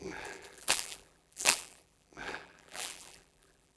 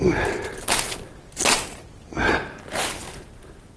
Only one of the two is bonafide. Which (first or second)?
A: second